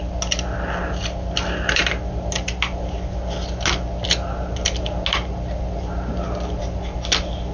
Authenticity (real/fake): real